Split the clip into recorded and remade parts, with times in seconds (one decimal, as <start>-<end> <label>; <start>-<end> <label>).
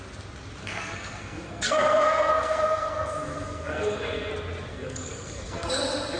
0.0-0.6 recorded; 0.6-4.3 remade; 4.3-4.7 recorded; 4.7-5.7 remade; 5.7-6.2 recorded